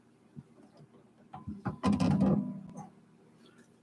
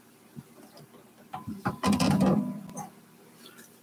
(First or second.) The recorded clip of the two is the first